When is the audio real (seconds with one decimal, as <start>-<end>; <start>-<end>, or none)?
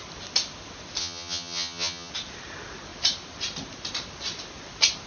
0.0-1.0; 2.1-5.1